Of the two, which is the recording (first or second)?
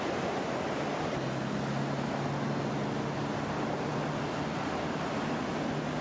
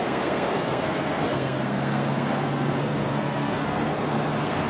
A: first